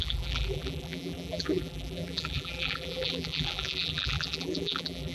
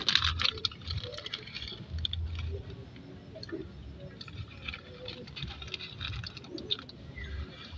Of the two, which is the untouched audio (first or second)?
second